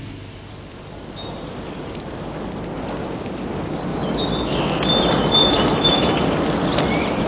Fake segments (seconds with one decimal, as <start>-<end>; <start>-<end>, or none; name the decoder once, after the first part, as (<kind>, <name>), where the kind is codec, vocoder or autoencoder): none